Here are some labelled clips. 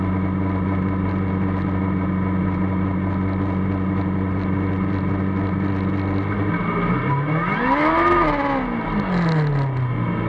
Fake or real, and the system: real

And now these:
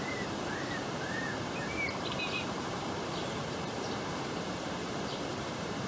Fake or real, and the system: fake, vocoder, BigVGAN v2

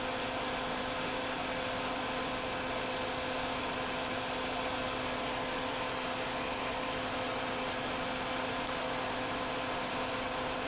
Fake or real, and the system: real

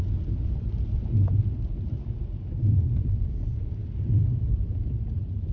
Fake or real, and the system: fake, vocoder, BigVGAN v2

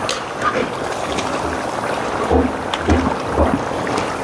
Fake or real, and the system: real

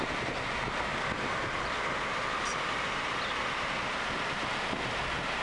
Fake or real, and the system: real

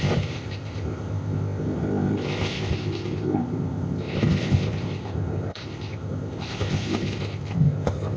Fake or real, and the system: fake, codec, ZipCodec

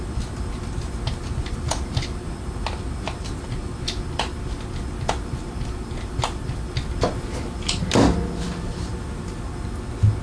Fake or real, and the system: real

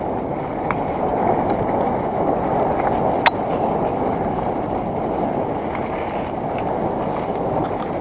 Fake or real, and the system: real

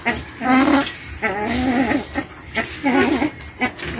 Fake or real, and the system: real